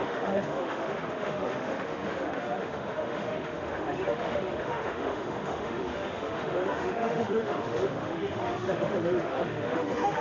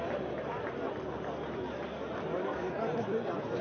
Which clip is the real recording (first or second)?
second